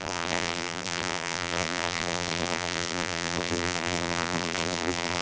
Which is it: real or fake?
fake